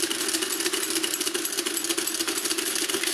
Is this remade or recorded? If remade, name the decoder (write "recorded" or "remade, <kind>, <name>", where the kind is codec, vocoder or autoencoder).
recorded